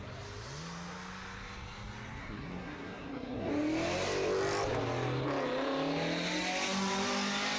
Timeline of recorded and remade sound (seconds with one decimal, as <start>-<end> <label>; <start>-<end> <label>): 0.0-2.2 recorded; 2.2-3.5 remade; 3.5-7.6 recorded